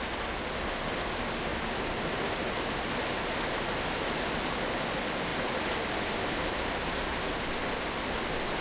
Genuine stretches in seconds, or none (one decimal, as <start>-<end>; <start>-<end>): 0.0-5.3; 6.0-8.6